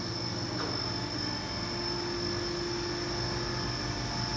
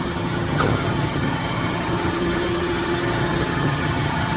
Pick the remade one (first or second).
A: second